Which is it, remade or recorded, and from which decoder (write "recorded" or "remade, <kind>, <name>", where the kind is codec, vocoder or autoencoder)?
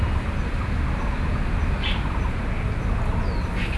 recorded